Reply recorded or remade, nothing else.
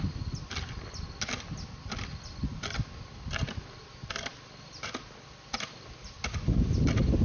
recorded